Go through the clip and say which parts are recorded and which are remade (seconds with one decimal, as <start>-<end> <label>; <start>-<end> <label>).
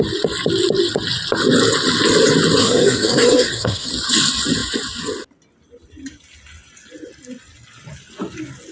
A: 0.0-2.6 recorded; 2.6-3.9 remade; 3.9-8.7 recorded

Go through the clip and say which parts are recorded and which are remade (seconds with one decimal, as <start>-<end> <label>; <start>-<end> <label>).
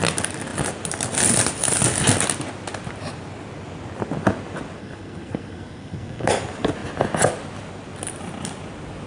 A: 0.0-4.8 recorded; 4.8-6.3 remade; 6.3-9.1 recorded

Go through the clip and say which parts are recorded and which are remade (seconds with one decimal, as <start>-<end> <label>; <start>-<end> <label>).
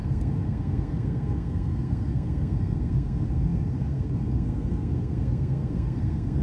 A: 0.0-6.4 remade